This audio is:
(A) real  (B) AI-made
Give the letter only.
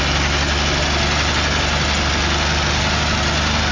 A